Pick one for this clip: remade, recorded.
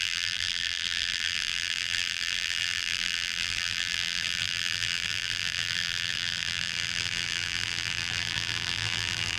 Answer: remade